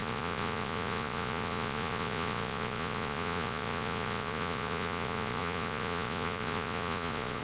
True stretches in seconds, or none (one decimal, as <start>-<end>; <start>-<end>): none

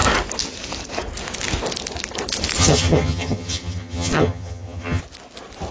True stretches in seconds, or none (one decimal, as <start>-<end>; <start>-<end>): 0.0-2.6; 5.0-5.7

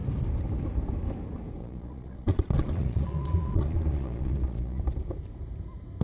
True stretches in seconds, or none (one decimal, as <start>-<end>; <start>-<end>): 0.0-1.6; 4.8-6.0